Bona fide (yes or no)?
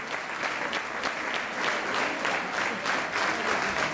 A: yes